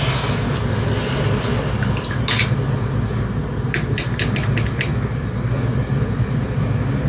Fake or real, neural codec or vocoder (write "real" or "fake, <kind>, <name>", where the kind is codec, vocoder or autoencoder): real